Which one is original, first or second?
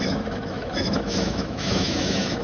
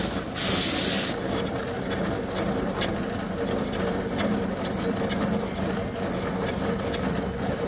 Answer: second